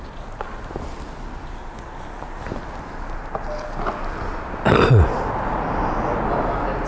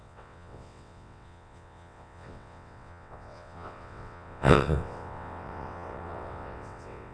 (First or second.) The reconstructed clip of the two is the second